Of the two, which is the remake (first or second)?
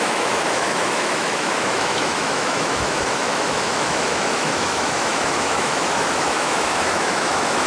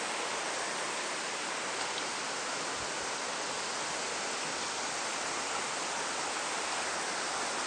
first